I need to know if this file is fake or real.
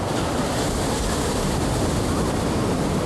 real